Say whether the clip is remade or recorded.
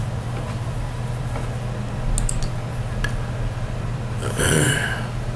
recorded